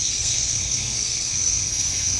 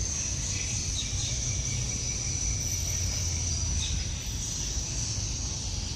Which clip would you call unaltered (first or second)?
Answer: second